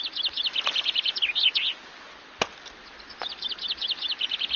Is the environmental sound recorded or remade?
recorded